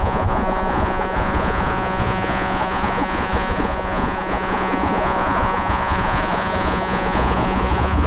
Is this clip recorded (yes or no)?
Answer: no